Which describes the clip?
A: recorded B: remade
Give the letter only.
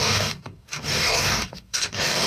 B